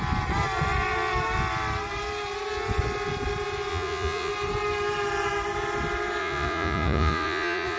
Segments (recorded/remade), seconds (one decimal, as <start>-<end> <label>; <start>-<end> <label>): 0.0-3.7 recorded; 3.7-4.3 remade; 4.3-6.2 recorded; 6.2-7.8 remade